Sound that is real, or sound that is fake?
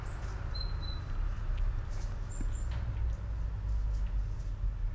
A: real